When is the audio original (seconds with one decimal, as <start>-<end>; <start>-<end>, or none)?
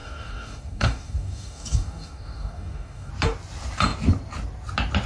3.1-5.1